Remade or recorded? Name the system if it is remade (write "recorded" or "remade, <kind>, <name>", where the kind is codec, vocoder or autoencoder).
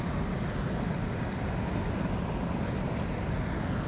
recorded